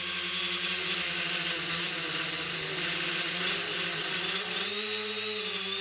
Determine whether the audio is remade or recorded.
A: recorded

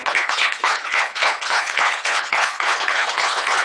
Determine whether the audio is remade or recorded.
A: remade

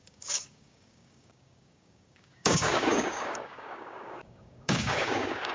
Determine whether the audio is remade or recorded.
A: remade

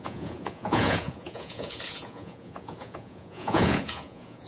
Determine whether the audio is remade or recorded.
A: remade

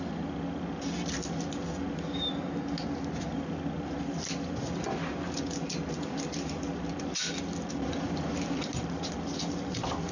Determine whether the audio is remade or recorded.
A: recorded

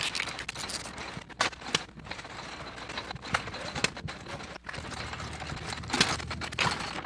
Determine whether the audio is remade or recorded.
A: recorded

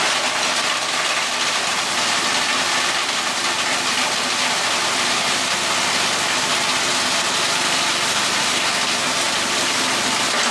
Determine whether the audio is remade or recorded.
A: recorded